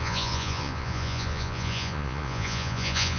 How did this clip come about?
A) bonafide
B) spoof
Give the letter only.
B